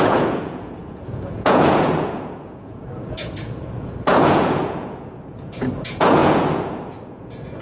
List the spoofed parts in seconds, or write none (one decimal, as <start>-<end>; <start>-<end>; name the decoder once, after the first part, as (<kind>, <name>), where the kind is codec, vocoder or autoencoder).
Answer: 0.0-7.6 (vocoder, Vocos)